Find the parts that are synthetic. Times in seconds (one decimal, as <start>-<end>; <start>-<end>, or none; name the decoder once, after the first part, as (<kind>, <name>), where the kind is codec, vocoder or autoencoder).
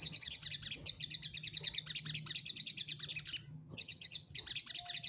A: 0.0-0.4 (vocoder, HiFi-GAN); 3.5-4.3